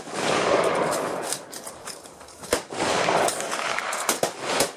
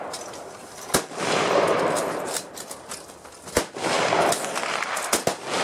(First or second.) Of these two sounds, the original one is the second